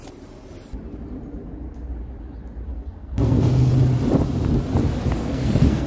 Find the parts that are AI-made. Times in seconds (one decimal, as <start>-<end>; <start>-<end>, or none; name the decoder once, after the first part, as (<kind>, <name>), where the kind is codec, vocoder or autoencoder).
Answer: 2.7-3.7 (codec, SNAC); 5.2-5.9